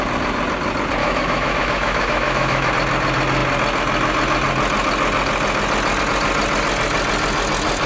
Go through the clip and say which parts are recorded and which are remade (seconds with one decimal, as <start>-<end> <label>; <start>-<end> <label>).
0.0-1.0 recorded; 1.0-2.7 remade; 2.7-7.9 recorded